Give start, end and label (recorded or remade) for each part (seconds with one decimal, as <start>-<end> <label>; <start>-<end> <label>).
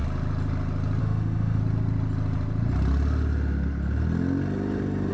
0.0-1.0 recorded; 1.0-1.6 remade; 1.6-5.1 recorded